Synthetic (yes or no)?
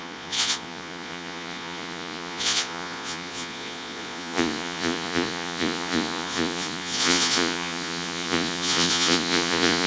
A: yes